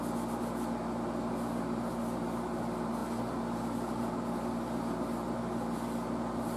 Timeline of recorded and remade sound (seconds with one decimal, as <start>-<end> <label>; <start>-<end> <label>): 0.0-6.6 recorded